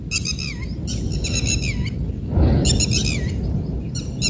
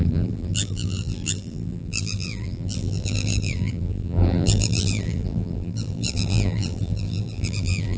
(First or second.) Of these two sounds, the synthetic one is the second